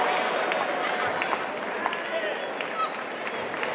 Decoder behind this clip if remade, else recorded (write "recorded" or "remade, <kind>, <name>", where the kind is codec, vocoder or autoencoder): recorded